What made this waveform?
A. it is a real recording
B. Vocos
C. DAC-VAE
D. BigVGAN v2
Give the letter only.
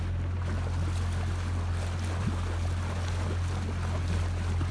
A